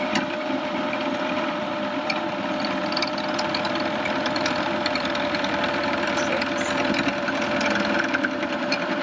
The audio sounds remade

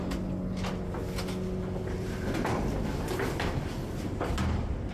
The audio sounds recorded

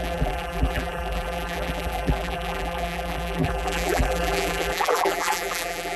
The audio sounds remade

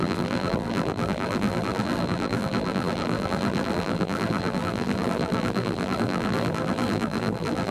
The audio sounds remade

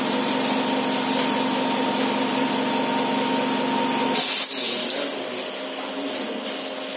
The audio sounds recorded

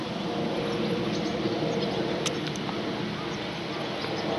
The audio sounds recorded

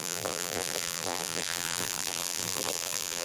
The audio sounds remade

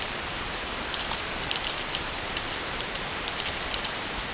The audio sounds remade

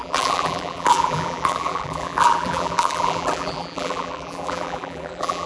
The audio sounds remade